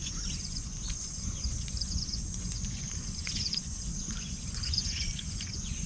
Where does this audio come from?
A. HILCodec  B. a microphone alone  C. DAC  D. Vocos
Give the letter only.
D